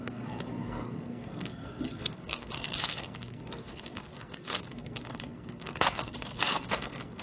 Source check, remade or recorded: remade